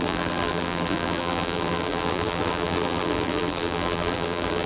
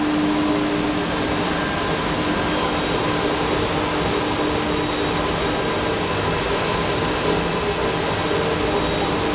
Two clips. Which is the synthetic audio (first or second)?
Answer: first